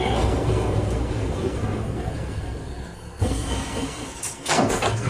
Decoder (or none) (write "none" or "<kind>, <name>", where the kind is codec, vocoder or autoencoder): codec, SNAC